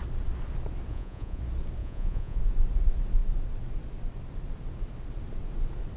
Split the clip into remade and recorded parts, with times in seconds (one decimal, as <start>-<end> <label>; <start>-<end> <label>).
0.0-0.9 recorded; 0.9-1.4 remade; 1.4-1.8 recorded; 1.8-2.4 remade; 2.4-6.0 recorded